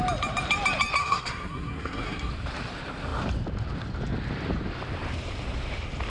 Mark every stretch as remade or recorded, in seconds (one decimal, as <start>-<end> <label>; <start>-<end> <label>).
0.0-1.0 recorded; 1.0-2.3 remade; 2.3-6.1 recorded

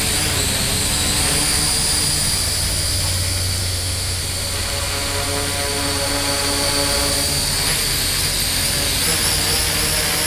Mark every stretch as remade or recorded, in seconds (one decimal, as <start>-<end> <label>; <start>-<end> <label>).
0.0-3.6 recorded; 3.6-4.2 remade; 4.2-10.3 recorded